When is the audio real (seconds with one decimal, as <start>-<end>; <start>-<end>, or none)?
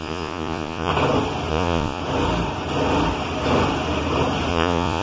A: 0.9-1.5; 2.0-4.5